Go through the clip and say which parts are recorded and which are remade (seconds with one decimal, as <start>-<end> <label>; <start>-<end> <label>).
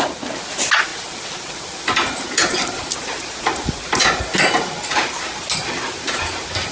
0.0-6.7 recorded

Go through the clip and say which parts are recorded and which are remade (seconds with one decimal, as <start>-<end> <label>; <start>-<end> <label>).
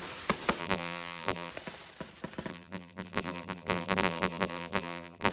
0.0-0.6 recorded; 0.6-1.5 remade; 1.5-2.5 recorded; 2.5-5.3 remade